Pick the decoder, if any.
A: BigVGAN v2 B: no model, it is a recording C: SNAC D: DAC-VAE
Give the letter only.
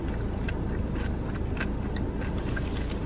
A